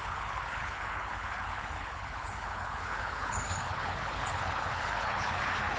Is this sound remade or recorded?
remade